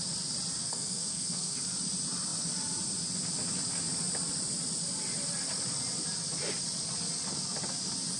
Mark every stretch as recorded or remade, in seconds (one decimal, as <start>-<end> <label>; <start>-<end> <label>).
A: 0.0-0.6 recorded; 0.6-1.6 remade; 1.6-8.2 recorded